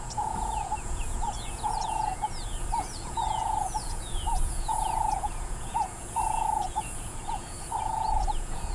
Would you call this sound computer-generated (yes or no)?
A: yes